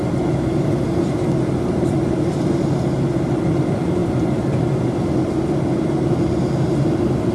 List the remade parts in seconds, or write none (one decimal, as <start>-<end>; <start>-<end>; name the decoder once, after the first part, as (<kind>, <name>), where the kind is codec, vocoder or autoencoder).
none